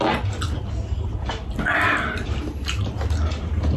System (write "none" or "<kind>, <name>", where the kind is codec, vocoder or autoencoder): none